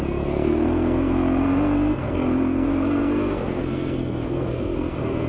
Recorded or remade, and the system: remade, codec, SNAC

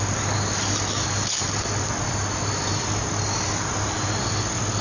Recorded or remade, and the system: recorded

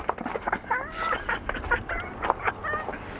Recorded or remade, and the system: recorded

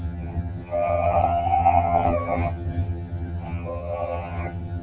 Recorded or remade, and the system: remade, vocoder, HiFi-GAN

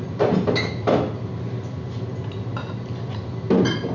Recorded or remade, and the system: recorded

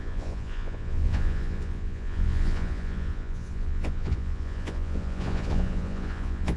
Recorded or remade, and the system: remade, vocoder, Vocos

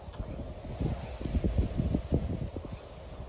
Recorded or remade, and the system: recorded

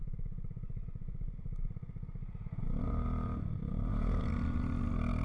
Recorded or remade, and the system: recorded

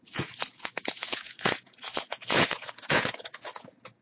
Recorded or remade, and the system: remade, vocoder, Vocos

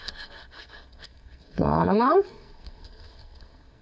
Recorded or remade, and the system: remade, codec, SNAC